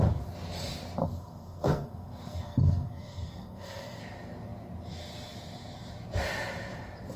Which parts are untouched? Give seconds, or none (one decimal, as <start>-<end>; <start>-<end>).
0.0-1.0; 4.0-7.2